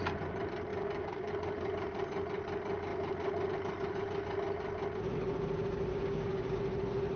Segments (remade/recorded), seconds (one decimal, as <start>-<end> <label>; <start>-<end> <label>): 0.0-0.7 recorded; 0.7-1.3 remade; 1.3-5.9 recorded; 5.9-6.6 remade; 6.6-7.2 recorded